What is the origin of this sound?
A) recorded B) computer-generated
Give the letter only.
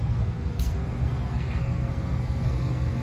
B